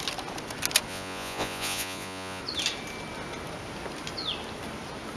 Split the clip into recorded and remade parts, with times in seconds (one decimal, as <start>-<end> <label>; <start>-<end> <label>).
0.0-0.9 recorded; 0.9-2.4 remade; 2.4-5.2 recorded